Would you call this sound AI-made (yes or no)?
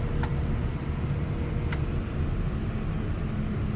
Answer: no